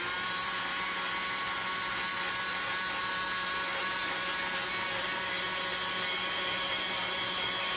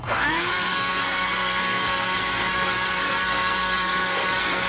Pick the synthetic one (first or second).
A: second